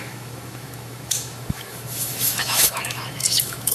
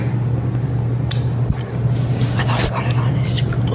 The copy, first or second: first